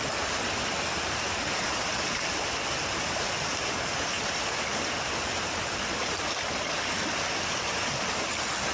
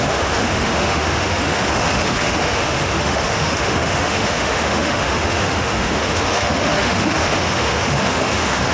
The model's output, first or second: second